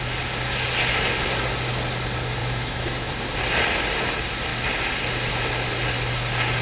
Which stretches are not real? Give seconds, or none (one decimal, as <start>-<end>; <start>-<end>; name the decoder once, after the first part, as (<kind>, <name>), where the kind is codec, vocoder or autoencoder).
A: 2.4-3.1 (autoencoder, DAC-VAE)